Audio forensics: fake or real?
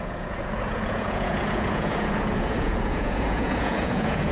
fake